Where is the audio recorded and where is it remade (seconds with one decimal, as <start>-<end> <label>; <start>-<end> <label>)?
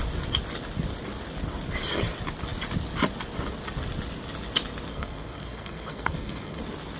0.0-4.9 recorded; 4.9-6.6 remade; 6.6-7.0 recorded